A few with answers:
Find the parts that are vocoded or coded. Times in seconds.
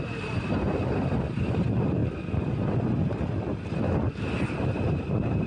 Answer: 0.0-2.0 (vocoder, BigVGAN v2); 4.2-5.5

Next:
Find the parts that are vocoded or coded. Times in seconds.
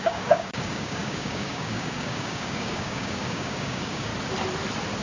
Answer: 0.0-4.1 (codec, DAC)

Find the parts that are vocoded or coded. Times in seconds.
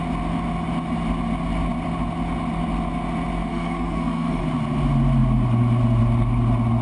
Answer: 3.5-4.4 (codec, SNAC)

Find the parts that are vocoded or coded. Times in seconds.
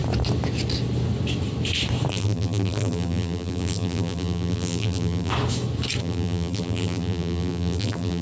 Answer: 2.1-5.3 (vocoder, BigVGAN v2); 6.0-8.2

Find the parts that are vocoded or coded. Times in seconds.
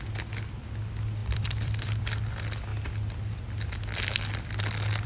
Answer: 1.2-2.1 (vocoder, BigVGAN v2)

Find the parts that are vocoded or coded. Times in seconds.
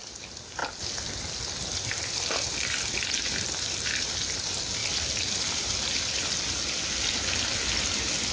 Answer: 0.6-4.1 (vocoder, BigVGAN v2); 4.8-5.6; 6.2-6.7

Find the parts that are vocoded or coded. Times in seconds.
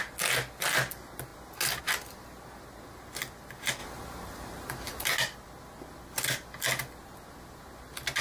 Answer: 3.8-5.1 (vocoder, BigVGAN v2)